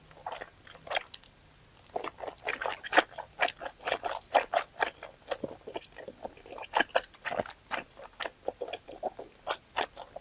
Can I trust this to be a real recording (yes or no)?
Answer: yes